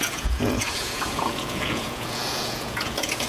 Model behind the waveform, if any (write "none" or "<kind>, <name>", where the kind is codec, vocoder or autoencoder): vocoder, Vocos